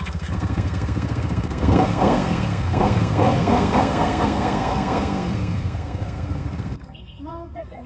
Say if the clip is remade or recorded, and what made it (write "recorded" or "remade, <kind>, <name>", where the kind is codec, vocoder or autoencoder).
remade, codec, SNAC